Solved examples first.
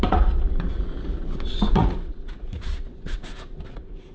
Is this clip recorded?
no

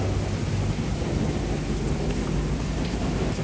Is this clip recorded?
yes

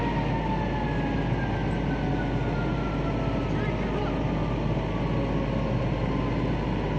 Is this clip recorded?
yes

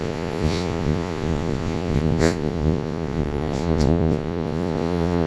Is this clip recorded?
no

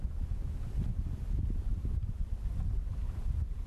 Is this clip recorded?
yes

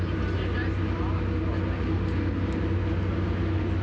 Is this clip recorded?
yes